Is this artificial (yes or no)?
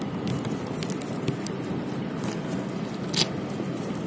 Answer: no